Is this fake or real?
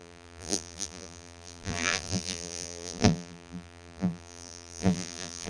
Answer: fake